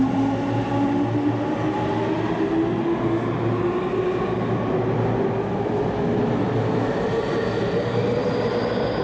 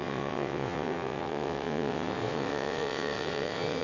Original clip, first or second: first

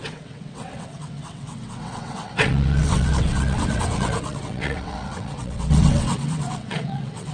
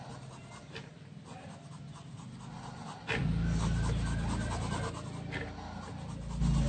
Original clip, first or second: second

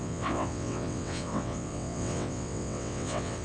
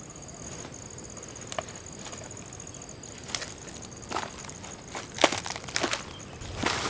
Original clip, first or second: second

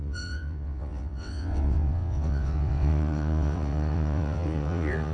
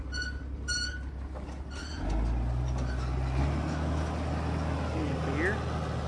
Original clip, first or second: second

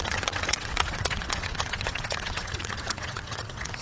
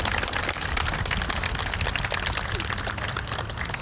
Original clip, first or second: second